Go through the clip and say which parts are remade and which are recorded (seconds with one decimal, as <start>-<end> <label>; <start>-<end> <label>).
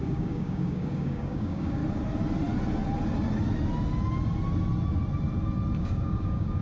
0.0-1.8 remade; 1.8-5.8 recorded; 5.8-6.6 remade